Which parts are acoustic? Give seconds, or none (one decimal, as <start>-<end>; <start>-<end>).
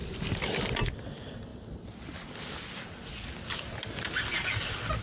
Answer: 0.0-5.0